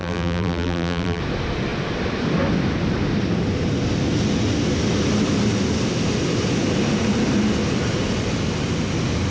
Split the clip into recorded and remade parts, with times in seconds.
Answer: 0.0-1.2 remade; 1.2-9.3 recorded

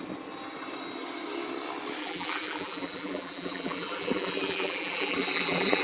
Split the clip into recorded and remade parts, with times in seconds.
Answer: 0.0-2.0 recorded; 2.0-5.8 remade

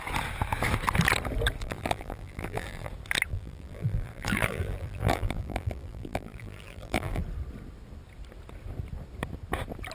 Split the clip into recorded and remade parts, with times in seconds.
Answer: 0.0-1.6 recorded; 1.6-2.9 remade; 2.9-3.3 recorded; 3.3-7.2 remade; 7.2-9.9 recorded

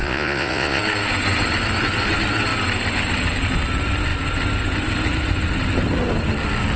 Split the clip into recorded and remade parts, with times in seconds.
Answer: 0.0-0.8 remade; 0.8-6.8 recorded

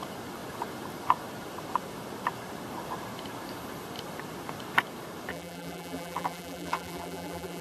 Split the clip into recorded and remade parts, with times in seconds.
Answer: 0.0-5.3 recorded; 5.3-7.6 remade

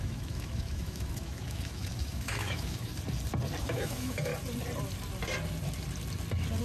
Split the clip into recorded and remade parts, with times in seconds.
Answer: 0.0-2.9 remade; 2.9-3.6 recorded; 3.6-4.3 remade; 4.3-6.6 recorded

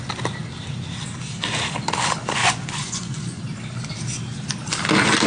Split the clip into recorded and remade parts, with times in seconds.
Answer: 0.0-2.4 recorded; 2.4-3.4 remade; 3.4-5.3 recorded

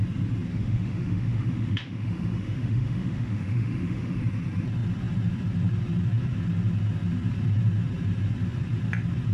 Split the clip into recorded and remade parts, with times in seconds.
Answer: 0.0-0.5 recorded; 0.5-4.2 remade; 4.2-9.3 recorded